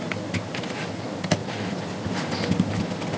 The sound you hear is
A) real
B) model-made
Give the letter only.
A